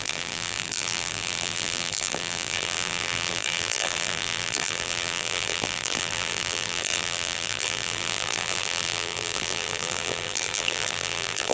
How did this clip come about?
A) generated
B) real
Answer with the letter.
A